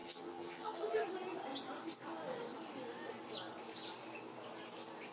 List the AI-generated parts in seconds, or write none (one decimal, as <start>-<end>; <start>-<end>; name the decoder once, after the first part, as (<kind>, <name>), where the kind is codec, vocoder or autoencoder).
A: 0.0-1.1 (vocoder, HiFi-GAN)